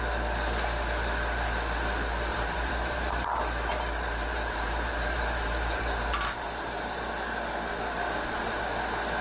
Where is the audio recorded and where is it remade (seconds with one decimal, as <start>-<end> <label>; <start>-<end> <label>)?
0.0-2.3 recorded; 2.3-7.1 remade; 7.1-9.2 recorded